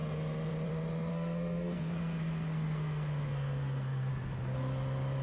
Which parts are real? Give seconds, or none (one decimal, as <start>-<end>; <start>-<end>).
0.0-1.1; 4.1-5.2